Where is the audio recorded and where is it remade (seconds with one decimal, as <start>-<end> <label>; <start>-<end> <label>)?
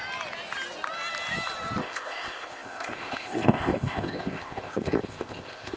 0.0-1.8 recorded; 1.8-5.8 remade